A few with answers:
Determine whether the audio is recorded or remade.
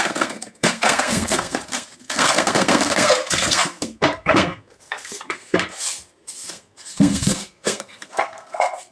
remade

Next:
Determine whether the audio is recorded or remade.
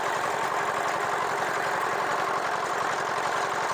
recorded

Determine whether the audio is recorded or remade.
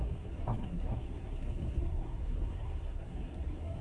remade